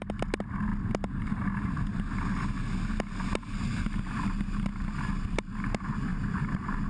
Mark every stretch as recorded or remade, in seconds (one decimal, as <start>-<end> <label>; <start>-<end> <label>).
0.0-6.9 recorded